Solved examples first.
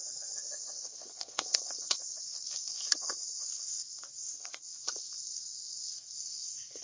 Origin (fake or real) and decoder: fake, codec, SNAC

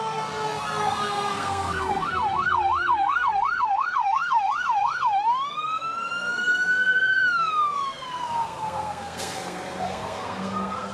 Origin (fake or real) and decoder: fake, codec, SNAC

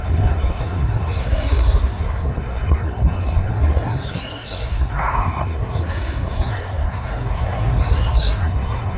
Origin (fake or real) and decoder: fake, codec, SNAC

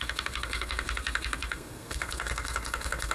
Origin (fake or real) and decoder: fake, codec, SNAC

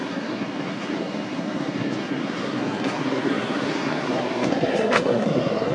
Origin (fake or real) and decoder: fake, codec, SNAC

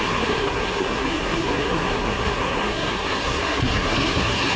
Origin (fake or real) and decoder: fake, codec, SNAC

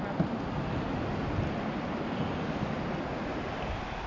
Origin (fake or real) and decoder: real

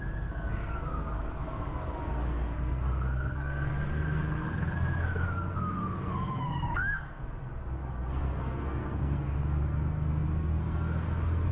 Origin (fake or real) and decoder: fake, codec, SNAC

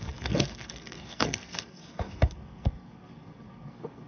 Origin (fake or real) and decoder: fake, codec, SNAC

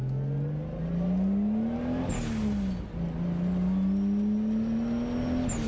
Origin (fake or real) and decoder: real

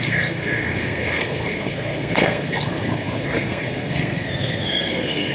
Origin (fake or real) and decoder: fake, codec, SNAC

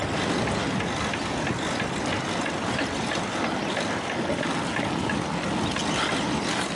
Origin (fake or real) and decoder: real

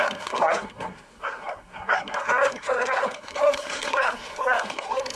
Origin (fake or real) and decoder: fake, codec, SNAC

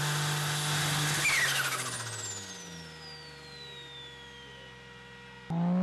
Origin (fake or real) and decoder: real